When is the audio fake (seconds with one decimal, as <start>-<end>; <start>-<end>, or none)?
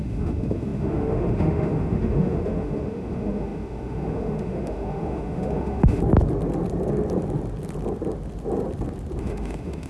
0.0-6.0; 9.2-9.9